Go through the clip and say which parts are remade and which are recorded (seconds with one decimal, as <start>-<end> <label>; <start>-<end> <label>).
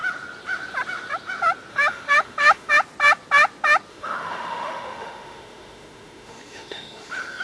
0.0-1.7 recorded; 1.7-2.7 remade; 2.7-3.9 recorded; 3.9-7.4 remade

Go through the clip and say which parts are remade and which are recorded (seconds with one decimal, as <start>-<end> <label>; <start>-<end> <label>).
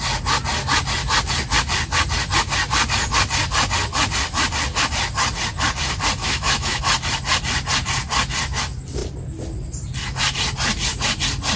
0.0-6.2 recorded; 6.2-6.8 remade; 6.8-11.6 recorded